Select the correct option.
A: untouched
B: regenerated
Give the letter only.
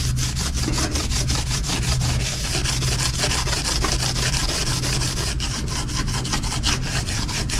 A